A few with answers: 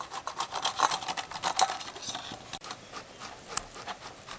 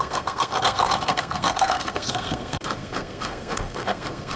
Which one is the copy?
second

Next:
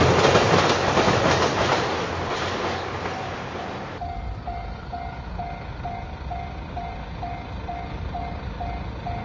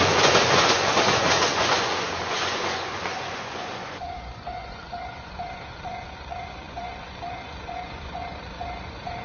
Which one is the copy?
second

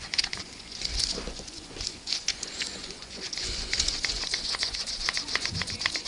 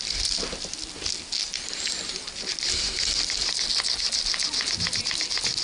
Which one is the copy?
first